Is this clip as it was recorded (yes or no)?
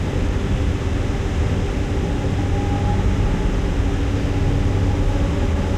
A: yes